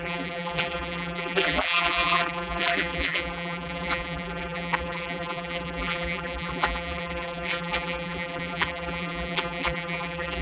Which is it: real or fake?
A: fake